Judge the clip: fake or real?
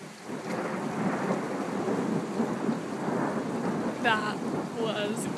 real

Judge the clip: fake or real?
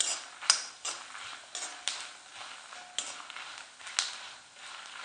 real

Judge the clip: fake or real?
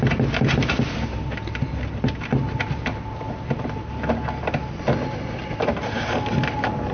real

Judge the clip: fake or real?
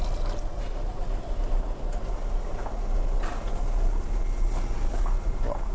real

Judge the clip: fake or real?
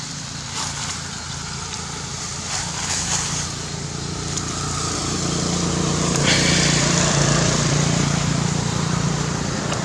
fake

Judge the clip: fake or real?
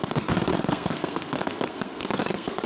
fake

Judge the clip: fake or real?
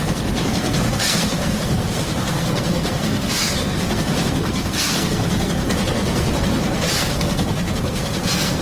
fake